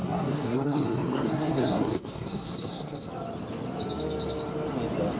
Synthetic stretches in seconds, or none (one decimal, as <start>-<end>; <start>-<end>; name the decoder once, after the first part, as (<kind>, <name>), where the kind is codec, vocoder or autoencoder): 0.0-3.1 (codec, SNAC)